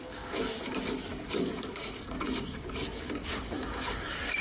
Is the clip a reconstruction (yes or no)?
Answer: yes